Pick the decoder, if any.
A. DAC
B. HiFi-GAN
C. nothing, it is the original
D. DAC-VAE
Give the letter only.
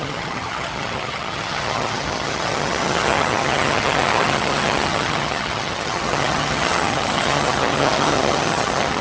B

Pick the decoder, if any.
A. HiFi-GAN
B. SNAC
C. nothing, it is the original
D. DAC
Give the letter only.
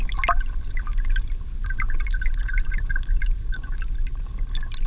C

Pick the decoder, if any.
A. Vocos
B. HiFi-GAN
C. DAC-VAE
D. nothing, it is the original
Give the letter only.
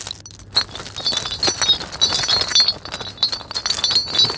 D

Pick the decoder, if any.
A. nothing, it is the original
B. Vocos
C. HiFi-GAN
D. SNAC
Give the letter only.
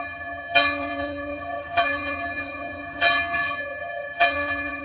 C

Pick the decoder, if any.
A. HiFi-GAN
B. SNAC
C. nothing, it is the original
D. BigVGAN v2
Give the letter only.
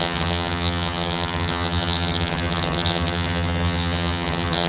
A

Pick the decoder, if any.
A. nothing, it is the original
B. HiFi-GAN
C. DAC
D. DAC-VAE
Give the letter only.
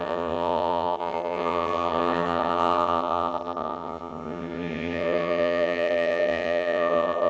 B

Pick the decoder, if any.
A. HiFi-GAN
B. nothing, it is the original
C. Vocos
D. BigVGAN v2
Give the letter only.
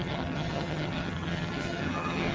A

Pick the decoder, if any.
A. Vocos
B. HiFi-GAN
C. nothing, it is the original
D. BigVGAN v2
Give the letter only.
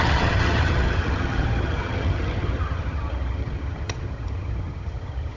B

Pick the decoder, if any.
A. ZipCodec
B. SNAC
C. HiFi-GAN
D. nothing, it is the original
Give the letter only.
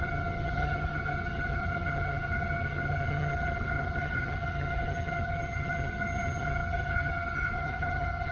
C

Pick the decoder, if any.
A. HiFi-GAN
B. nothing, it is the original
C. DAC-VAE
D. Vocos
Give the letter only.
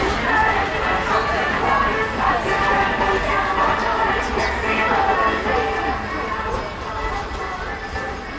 B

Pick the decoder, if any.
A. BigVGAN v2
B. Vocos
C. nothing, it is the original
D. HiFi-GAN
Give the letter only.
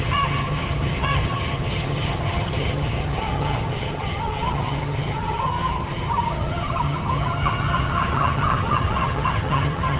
D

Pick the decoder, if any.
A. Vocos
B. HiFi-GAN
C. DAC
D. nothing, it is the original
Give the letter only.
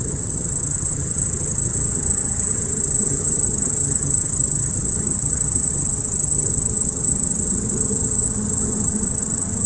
B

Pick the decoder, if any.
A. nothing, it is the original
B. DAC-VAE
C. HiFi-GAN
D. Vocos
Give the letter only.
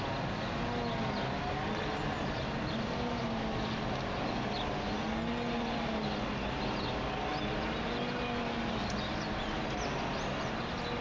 A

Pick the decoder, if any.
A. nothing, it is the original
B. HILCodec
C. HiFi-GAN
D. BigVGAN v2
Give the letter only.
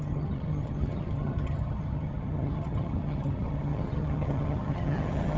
C